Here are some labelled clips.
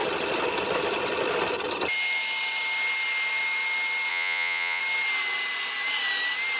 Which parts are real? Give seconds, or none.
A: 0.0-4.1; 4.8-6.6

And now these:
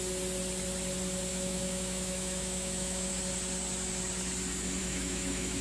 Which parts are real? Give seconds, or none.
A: 0.0-1.3; 3.1-4.8

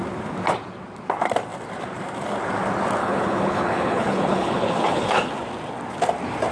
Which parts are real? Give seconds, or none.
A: 0.0-3.0; 5.3-6.5

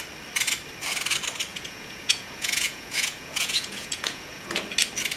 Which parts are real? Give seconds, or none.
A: 0.0-1.5; 4.6-5.2

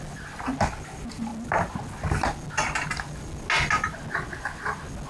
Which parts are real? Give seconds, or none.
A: 0.0-5.1